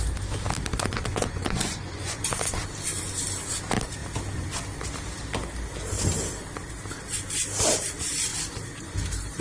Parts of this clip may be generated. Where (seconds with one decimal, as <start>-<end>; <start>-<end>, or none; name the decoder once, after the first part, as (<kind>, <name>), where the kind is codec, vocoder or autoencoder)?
0.7-2.2 (vocoder, Vocos)

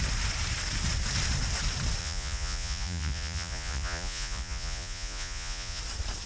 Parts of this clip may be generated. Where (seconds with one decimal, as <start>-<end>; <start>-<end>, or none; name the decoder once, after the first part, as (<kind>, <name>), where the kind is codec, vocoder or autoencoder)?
2.0-5.8 (vocoder, Vocos)

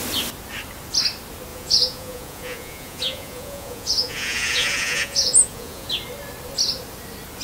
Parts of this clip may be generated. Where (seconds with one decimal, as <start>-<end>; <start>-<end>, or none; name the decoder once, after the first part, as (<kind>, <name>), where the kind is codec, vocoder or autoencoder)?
1.5-5.9 (vocoder, Vocos)

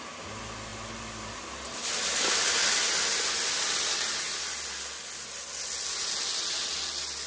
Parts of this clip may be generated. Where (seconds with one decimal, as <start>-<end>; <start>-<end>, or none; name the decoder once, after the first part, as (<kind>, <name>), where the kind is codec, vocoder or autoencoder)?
none

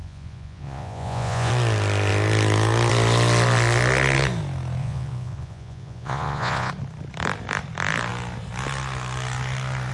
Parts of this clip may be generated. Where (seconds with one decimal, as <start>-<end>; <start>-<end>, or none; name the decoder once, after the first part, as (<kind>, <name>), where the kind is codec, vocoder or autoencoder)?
0.0-1.5 (vocoder, Vocos); 4.8-6.7